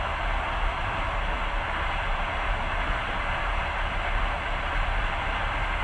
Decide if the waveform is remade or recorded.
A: recorded